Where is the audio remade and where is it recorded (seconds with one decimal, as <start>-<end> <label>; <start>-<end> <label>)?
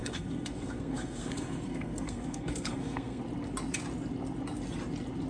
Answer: 0.0-3.2 remade; 3.2-5.3 recorded